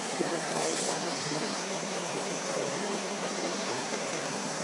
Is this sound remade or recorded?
remade